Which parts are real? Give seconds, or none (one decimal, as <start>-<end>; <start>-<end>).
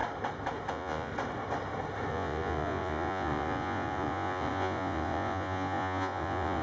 0.0-0.7; 1.1-2.1